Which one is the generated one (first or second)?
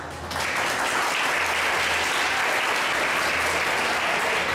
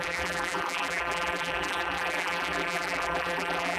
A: second